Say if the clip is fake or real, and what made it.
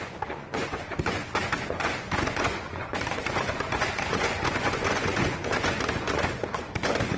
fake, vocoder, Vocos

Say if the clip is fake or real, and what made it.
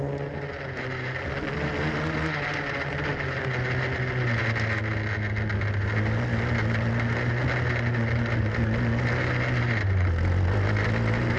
real